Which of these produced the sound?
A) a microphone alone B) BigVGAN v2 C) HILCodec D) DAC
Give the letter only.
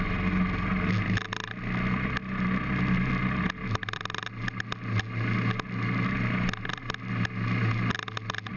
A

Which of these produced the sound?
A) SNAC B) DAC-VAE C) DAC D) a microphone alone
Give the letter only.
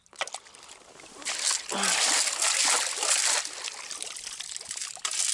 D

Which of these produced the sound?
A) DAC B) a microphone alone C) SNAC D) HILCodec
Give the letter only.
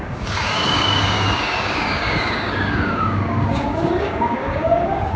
A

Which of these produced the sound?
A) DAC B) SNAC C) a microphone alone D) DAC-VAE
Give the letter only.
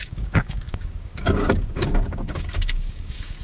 A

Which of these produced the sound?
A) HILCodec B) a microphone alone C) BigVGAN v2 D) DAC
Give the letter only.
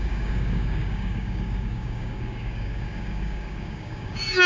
D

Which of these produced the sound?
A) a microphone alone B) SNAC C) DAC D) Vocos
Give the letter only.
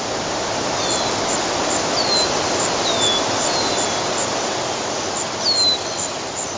A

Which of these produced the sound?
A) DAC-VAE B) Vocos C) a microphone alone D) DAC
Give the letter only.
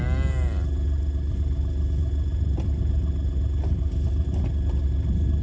C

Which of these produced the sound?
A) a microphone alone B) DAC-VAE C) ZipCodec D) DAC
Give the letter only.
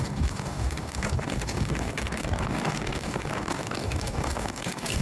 D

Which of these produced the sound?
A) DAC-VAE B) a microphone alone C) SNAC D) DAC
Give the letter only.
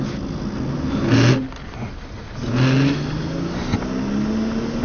B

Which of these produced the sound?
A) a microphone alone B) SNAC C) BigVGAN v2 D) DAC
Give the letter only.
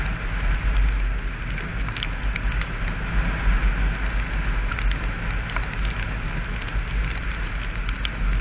A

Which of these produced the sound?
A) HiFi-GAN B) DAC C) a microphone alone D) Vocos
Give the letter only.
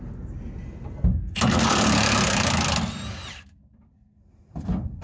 C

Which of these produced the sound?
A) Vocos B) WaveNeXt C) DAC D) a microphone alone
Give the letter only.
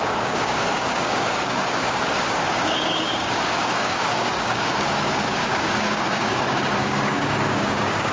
C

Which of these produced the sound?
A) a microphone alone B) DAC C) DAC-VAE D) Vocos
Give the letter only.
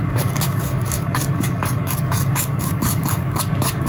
B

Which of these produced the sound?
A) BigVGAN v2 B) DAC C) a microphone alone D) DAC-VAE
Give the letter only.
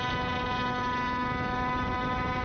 C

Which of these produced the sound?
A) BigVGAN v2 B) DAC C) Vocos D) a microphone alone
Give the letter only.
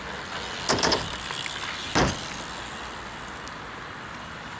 D